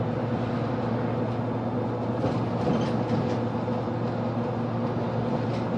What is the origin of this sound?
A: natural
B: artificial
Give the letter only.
A